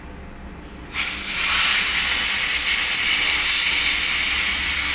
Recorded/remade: recorded